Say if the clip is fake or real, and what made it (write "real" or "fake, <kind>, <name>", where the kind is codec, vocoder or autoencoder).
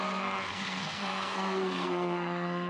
fake, codec, SNAC